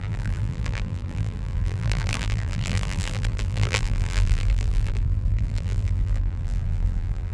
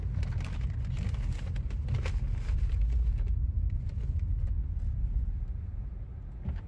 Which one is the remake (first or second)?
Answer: first